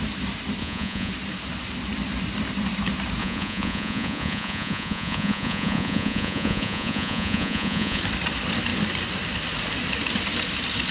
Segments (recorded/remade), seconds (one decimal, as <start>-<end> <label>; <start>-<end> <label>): 0.0-0.6 recorded; 0.6-1.1 remade; 1.1-3.2 recorded; 3.2-8.0 remade; 8.0-10.9 recorded